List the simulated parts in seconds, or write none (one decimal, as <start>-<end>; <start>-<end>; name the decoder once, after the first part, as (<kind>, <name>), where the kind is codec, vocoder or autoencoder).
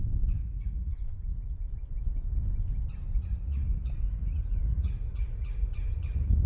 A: 0.4-1.7 (vocoder, Vocos); 3.2-6.5